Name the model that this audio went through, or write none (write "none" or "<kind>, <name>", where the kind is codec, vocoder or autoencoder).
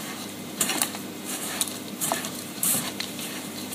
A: vocoder, BigVGAN v2